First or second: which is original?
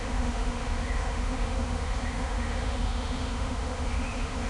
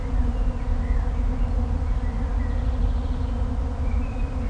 second